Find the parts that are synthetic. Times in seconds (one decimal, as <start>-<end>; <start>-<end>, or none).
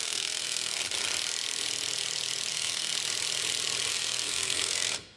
0.0-0.8; 2.5-2.9; 3.9-5.2